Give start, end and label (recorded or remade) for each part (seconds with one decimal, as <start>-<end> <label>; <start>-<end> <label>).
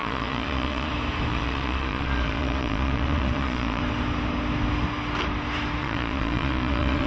0.0-0.9 remade; 0.9-1.3 recorded; 1.3-3.8 remade; 3.8-5.8 recorded; 5.8-7.1 remade